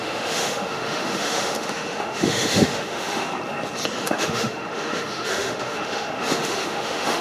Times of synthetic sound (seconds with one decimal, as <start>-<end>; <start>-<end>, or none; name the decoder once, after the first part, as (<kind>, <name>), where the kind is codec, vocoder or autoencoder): 0.0-3.3 (autoencoder, DAC-VAE); 4.0-7.2